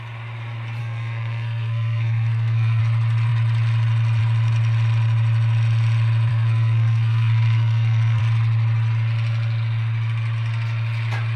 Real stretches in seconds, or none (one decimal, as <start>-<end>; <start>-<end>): 0.0-0.8; 2.8-6.3; 8.2-11.4

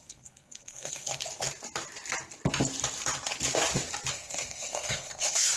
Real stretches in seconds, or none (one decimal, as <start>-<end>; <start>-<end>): 1.2-4.1

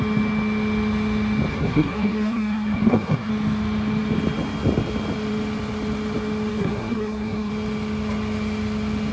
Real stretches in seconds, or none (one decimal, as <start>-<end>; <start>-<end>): 0.0-1.5; 3.3-6.5; 7.5-9.1